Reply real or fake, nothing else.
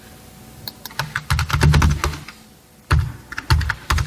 real